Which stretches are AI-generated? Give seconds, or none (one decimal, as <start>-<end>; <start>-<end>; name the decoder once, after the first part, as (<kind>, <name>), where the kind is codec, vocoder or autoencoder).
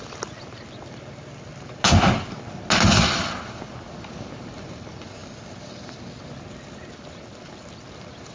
none